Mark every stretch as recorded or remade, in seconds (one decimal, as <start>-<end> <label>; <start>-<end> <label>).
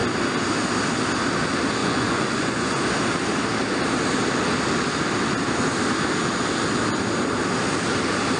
0.0-1.8 recorded; 1.8-2.8 remade; 2.8-8.4 recorded